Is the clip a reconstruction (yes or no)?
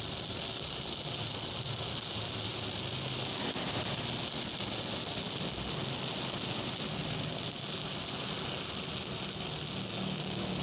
no